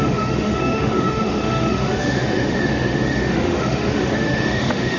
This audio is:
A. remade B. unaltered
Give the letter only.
A